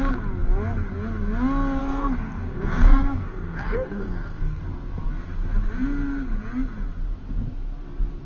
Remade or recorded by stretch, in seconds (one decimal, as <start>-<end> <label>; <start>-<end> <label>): 0.0-1.8 recorded; 1.8-4.6 remade; 4.6-8.2 recorded